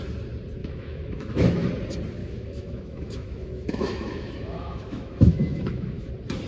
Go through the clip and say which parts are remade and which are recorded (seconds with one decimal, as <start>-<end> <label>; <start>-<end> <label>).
0.0-0.6 recorded; 0.6-1.7 remade; 1.7-2.2 recorded; 2.2-6.1 remade; 6.1-6.5 recorded